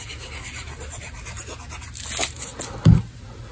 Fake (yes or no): no